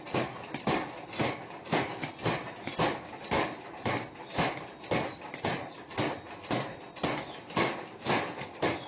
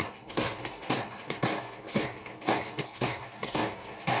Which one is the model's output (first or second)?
second